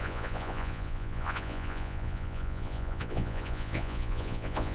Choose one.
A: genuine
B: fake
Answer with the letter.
B